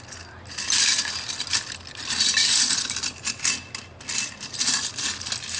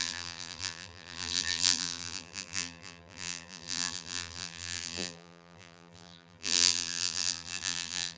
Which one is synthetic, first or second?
second